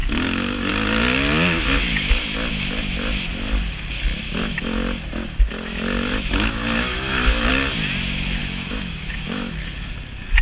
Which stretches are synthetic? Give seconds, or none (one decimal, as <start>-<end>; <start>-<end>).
0.0-0.7; 6.1-7.5; 8.4-9.9

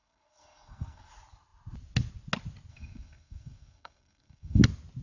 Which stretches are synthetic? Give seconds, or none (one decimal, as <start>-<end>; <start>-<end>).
0.0-1.1; 2.7-4.6

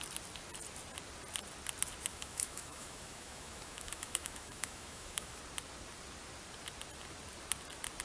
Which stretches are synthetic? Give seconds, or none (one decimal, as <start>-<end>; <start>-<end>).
2.1-5.4

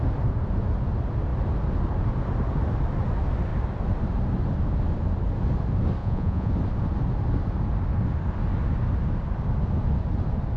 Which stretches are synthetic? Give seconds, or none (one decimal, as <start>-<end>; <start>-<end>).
6.0-6.5